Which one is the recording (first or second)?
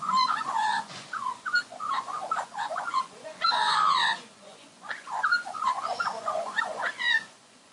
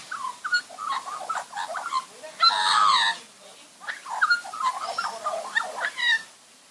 second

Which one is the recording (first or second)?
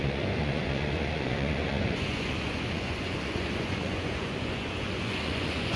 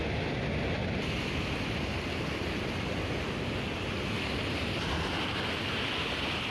second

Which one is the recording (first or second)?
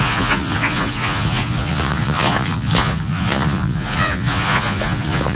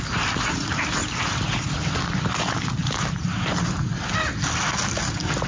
second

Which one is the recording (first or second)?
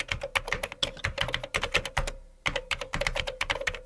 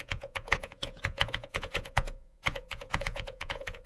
first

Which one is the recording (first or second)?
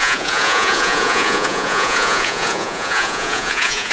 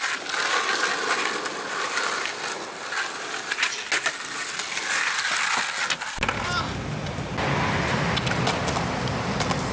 second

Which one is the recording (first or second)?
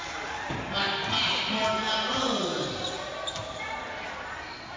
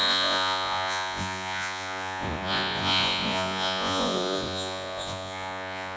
first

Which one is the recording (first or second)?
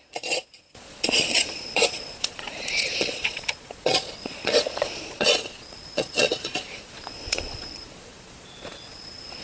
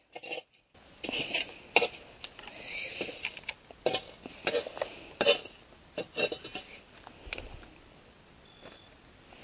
second